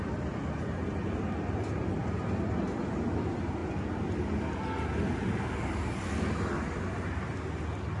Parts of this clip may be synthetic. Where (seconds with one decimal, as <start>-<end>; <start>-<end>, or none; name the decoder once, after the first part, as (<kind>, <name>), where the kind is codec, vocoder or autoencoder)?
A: none